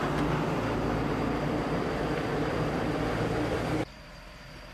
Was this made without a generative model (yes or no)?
no